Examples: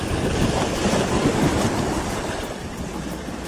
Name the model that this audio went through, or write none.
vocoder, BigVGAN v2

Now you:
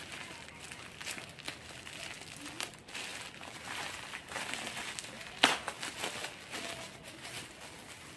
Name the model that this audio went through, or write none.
none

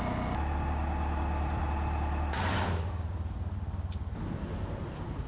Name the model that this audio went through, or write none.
none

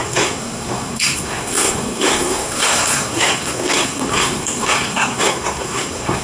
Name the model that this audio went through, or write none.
codec, SNAC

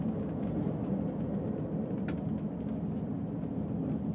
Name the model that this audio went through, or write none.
none